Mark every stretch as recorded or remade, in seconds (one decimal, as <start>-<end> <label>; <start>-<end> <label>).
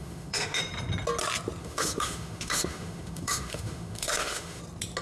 0.0-0.6 remade; 0.6-1.6 recorded; 1.6-4.6 remade; 4.6-5.0 recorded